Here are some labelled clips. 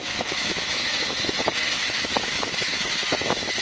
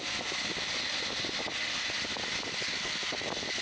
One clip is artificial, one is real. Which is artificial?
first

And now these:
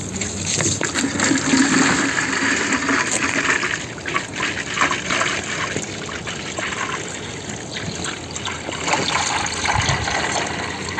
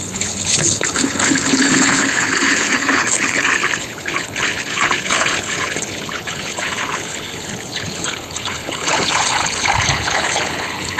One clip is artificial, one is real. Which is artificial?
second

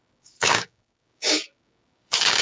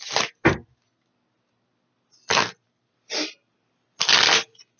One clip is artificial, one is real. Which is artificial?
first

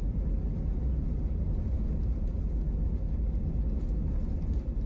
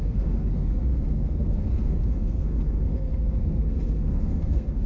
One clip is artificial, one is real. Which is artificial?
second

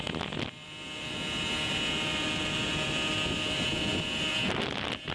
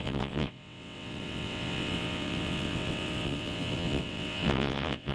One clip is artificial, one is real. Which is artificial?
second